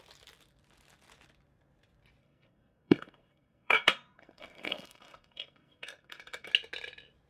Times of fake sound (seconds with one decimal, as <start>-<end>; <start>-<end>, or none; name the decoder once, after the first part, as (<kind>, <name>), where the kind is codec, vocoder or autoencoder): 2.2-6.5 (codec, SNAC)